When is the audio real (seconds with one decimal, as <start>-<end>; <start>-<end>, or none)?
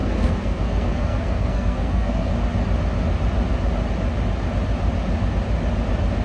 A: 2.3-6.2